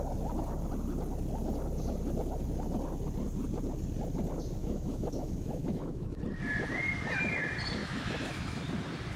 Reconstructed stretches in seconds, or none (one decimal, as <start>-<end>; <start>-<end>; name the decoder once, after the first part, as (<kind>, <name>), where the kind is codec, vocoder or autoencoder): 4.6-6.2 (autoencoder, DAC-VAE); 7.8-8.6